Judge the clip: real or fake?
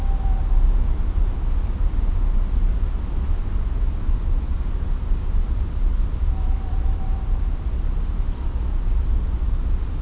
real